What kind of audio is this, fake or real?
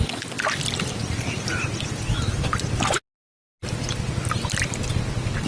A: real